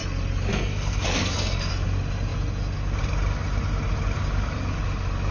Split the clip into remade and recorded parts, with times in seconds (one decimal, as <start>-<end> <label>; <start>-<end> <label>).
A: 0.0-0.5 recorded; 0.5-1.7 remade; 1.7-5.3 recorded